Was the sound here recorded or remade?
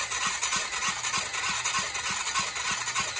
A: recorded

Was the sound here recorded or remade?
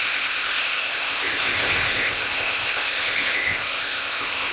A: remade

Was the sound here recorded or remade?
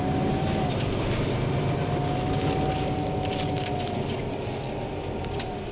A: recorded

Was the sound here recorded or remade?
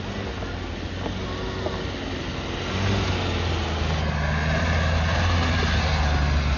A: recorded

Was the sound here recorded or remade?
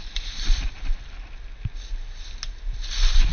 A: recorded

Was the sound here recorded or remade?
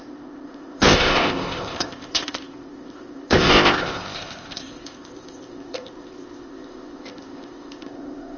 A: remade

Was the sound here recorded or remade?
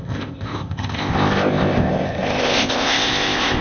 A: remade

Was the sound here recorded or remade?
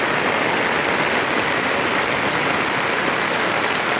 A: recorded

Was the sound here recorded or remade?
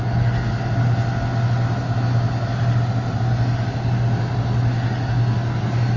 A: recorded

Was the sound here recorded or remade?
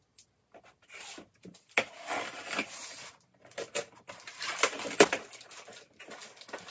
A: recorded